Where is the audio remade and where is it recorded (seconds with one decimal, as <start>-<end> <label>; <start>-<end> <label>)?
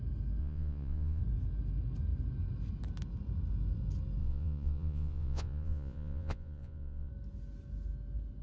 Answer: 0.0-0.4 recorded; 0.4-1.2 remade; 1.2-4.2 recorded; 4.2-7.1 remade; 7.1-8.4 recorded